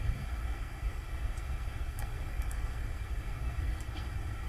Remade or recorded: remade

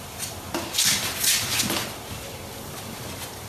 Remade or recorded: remade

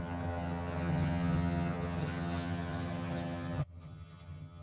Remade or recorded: remade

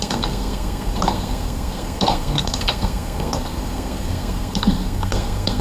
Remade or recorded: remade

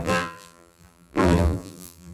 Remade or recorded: remade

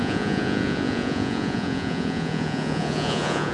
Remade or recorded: remade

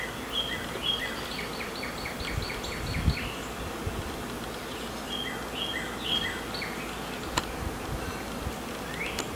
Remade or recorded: recorded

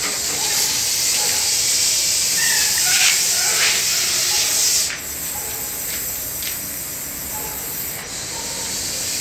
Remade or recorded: recorded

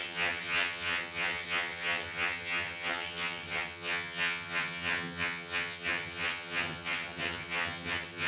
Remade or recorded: remade